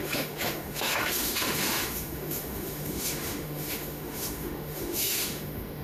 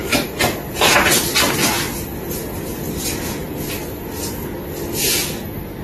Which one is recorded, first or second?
second